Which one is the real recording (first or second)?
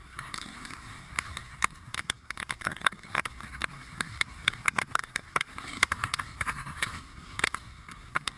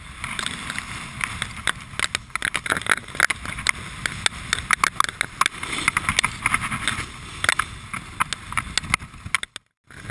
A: second